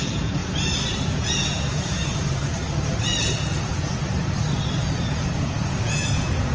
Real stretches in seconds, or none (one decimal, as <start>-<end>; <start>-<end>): 0.4-1.0; 2.1-3.3; 4.0-5.0